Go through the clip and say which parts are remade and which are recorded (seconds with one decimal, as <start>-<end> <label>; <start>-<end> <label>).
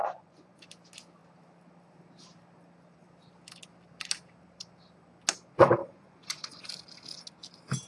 0.0-0.6 remade; 0.6-5.8 recorded; 5.8-6.6 remade; 6.6-7.9 recorded